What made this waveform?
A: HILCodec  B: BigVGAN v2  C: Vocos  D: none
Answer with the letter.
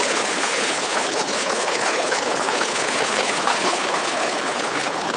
A